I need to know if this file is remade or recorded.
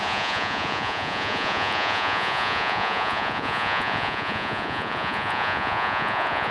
remade